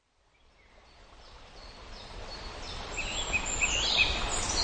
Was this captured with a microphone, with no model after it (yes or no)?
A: yes